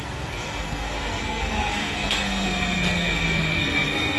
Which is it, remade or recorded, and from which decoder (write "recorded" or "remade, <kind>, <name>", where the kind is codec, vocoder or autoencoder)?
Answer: remade, codec, SNAC